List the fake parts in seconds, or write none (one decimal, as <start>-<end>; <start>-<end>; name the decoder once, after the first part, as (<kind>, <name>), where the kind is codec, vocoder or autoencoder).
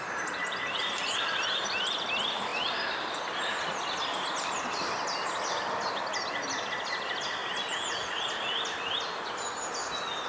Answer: none